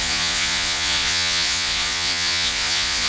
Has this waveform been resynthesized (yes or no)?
yes